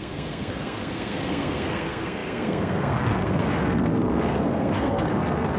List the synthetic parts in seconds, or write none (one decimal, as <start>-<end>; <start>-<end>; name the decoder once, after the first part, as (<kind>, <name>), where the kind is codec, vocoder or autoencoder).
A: 0.0-5.6 (codec, SNAC)